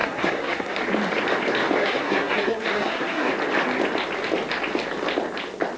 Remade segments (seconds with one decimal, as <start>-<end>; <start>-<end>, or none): 0.0-0.8; 1.8-3.3

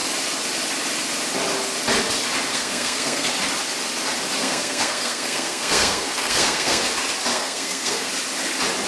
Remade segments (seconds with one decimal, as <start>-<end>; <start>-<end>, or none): 2.5-3.3; 4.4-6.8; 7.3-8.1

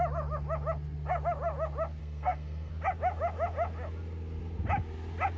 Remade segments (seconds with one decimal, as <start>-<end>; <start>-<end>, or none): 2.0-2.7

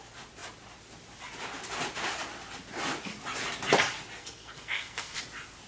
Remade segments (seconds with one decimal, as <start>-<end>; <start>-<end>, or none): 4.2-5.2